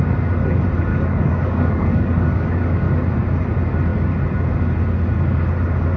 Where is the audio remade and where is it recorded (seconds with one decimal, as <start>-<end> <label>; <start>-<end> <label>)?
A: 0.0-0.9 recorded; 0.9-2.9 remade; 2.9-6.0 recorded